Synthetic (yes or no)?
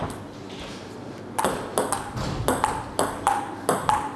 no